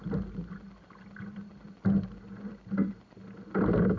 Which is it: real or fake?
real